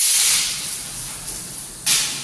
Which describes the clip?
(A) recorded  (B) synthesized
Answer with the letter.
A